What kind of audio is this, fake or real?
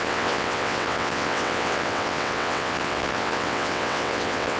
fake